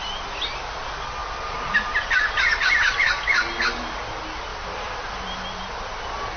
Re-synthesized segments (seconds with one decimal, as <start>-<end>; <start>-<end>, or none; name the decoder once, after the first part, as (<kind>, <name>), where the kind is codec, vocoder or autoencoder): 1.2-3.1 (vocoder, BigVGAN v2); 4.5-5.1